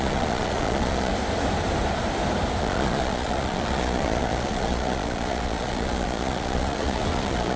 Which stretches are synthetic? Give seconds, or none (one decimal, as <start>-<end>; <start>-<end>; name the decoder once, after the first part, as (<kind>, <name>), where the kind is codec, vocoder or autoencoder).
0.0-1.1 (vocoder, Vocos); 2.6-7.6